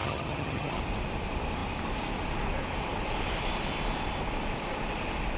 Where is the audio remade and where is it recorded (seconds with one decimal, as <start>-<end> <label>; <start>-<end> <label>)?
0.0-0.8 remade; 0.8-5.4 recorded